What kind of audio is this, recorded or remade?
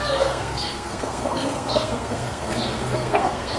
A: remade